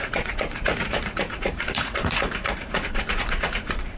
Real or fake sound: fake